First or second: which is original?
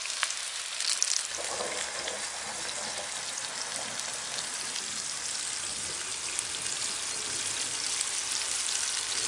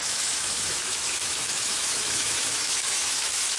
first